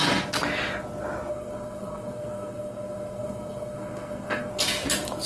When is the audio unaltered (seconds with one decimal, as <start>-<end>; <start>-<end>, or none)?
0.0-1.3; 4.5-5.3